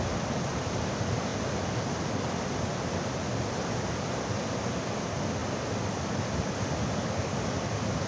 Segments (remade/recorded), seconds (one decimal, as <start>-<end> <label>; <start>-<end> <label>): 0.0-8.1 recorded